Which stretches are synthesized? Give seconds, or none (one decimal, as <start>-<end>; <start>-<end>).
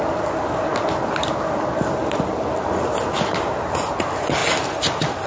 none